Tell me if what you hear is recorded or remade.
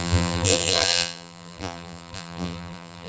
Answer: remade